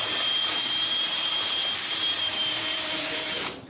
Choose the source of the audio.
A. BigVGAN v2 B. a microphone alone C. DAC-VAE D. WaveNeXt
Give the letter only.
A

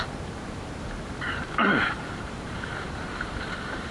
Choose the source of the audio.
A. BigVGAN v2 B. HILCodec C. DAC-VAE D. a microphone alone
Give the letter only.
A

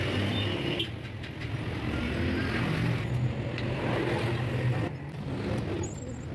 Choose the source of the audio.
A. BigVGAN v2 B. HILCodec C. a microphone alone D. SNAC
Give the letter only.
C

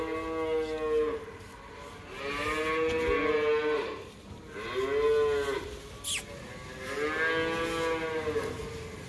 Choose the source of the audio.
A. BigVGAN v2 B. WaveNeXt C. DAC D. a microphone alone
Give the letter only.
D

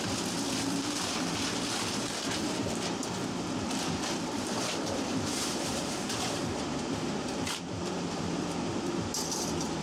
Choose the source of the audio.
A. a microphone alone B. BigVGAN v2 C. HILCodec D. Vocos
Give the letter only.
B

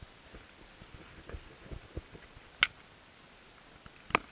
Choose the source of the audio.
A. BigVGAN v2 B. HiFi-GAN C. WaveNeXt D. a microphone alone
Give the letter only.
D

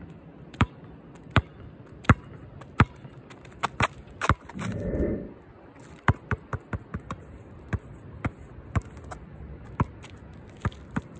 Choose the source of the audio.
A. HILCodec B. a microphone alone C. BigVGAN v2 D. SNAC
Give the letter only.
C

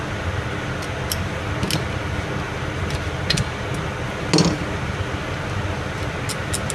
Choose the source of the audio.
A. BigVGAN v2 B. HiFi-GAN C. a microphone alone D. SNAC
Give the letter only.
C